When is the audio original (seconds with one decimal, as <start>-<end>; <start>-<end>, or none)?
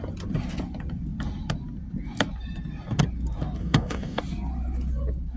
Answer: 0.0-3.6; 4.2-5.4